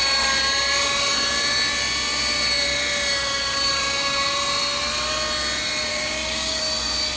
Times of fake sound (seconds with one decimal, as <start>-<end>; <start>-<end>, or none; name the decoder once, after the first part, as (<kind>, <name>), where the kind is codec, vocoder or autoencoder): 5.9-6.6 (codec, DAC)